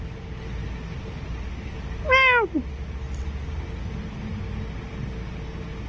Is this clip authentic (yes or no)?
yes